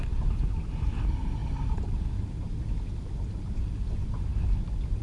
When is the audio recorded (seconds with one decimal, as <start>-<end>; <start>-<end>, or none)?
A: 0.0-5.0